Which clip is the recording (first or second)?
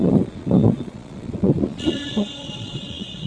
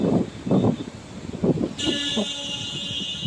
second